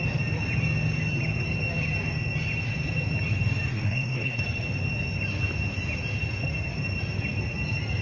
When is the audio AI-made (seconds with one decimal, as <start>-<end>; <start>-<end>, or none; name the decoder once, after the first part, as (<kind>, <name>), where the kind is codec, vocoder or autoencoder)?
3.7-4.4 (codec, SNAC)